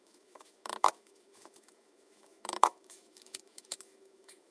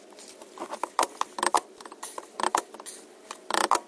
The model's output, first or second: first